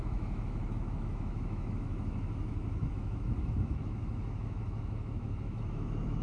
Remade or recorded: remade